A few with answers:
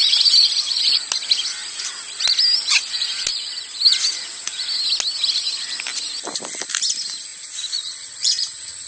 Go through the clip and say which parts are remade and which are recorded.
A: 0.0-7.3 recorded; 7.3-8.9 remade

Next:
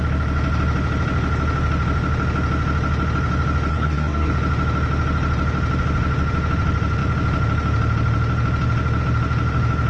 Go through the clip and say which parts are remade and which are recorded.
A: 0.0-3.7 recorded; 3.7-4.3 remade; 4.3-9.9 recorded

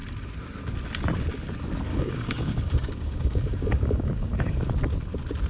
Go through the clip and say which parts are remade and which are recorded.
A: 0.0-1.9 recorded; 1.9-4.7 remade; 4.7-5.5 recorded